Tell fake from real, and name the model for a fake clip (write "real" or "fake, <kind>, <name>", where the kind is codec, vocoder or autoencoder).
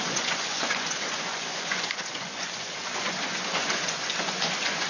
fake, vocoder, Vocos